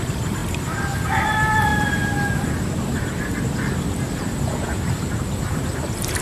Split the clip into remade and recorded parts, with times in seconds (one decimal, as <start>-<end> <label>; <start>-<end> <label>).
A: 0.0-0.4 remade; 0.4-1.2 recorded; 1.2-6.2 remade

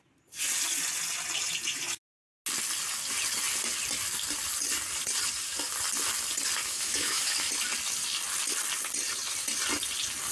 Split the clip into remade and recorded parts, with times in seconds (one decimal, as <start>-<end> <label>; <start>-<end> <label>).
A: 0.0-6.6 recorded; 6.6-7.5 remade; 7.5-10.3 recorded